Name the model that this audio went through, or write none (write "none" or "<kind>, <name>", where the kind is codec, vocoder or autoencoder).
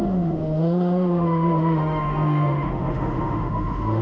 autoencoder, DAC-VAE